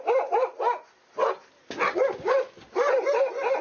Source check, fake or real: real